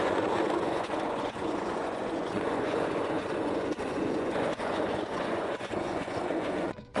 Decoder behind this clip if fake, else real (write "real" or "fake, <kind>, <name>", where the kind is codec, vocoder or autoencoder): fake, vocoder, Vocos